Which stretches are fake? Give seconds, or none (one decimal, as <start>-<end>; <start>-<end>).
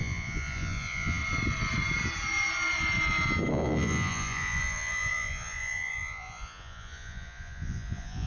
0.0-1.2; 3.5-8.3